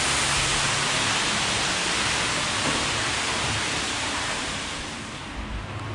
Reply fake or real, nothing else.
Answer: real